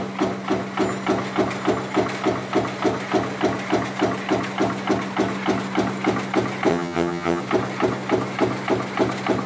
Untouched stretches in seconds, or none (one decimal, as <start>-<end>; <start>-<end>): 0.0-6.7; 7.4-9.5